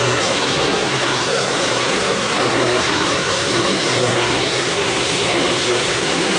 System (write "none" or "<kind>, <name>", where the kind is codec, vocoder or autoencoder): codec, SNAC